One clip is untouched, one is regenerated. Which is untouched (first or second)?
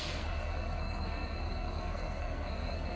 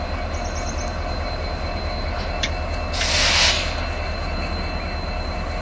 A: second